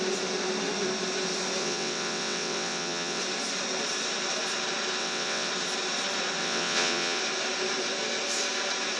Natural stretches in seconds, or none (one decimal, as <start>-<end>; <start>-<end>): 0.0-1.6; 3.2-5.0; 5.5-6.4; 7.2-9.0

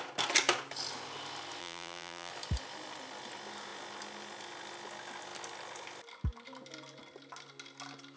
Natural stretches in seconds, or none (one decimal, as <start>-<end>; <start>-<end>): 0.0-1.6; 2.3-8.2

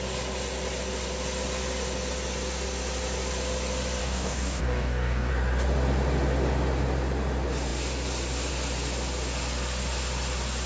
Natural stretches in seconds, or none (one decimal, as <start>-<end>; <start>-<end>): 0.0-4.0; 5.3-10.7

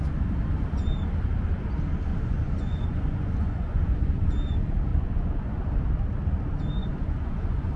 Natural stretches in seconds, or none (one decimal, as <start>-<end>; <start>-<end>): 0.0-2.1; 4.3-4.9; 5.6-6.8

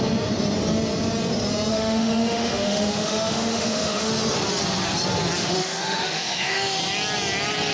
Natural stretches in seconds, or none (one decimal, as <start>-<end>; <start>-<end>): 0.0-1.7; 4.1-5.4; 6.8-7.7

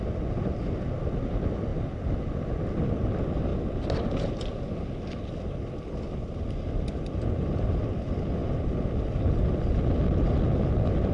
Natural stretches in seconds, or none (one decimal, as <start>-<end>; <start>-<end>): 0.0-11.1

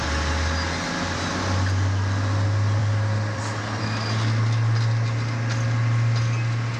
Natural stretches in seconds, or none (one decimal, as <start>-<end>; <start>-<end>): 0.0-2.8; 3.8-6.8